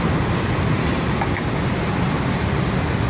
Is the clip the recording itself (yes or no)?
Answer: yes